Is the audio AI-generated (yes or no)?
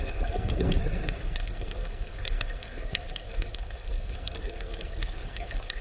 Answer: yes